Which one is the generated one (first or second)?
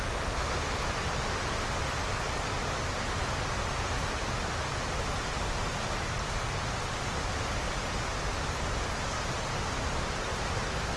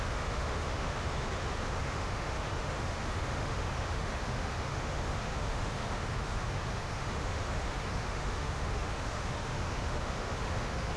second